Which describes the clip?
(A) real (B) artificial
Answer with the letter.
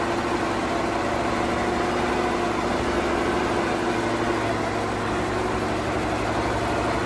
A